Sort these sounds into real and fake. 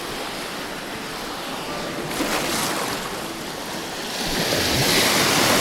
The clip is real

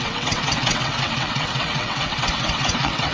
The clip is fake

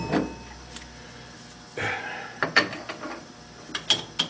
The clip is real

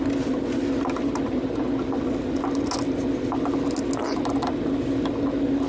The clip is real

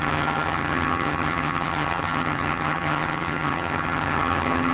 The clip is fake